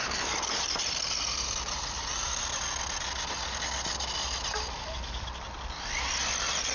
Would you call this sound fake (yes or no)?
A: no